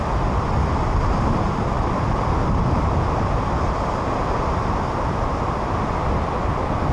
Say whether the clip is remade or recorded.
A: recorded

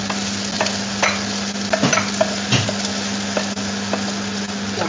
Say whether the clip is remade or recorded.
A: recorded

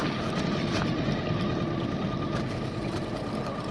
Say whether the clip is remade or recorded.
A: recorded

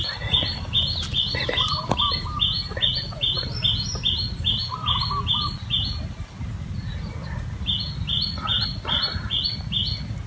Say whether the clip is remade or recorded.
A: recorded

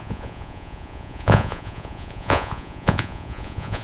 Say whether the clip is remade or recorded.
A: remade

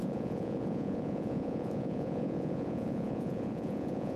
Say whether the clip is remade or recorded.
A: remade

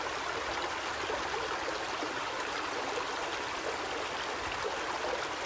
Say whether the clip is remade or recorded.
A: recorded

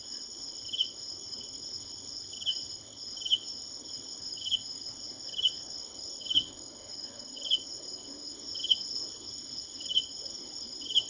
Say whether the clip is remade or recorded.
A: remade